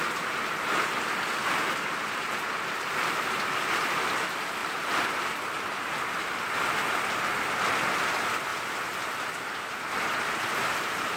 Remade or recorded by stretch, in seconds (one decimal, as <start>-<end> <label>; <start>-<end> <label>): 0.0-1.4 recorded; 1.4-3.8 remade; 3.8-4.6 recorded; 4.6-5.2 remade; 5.2-11.2 recorded

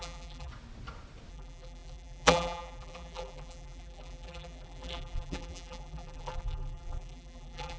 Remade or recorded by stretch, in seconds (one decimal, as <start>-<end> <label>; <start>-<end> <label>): 0.0-0.5 remade; 0.5-1.3 recorded; 1.3-7.8 remade

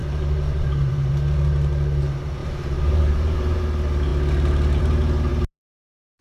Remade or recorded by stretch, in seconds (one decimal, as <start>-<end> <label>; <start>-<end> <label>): 0.0-1.1 remade; 1.1-2.4 recorded; 2.4-3.6 remade; 3.6-5.3 recorded; 5.3-6.2 remade

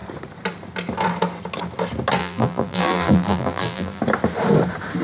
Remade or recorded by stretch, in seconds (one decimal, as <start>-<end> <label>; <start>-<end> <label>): 0.0-2.2 recorded; 2.2-4.0 remade; 4.0-5.0 recorded